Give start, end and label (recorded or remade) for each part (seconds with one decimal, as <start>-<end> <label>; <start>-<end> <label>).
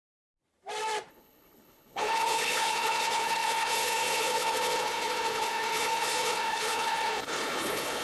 0.0-1.1 recorded; 1.1-8.0 remade